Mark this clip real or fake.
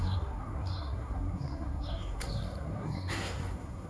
fake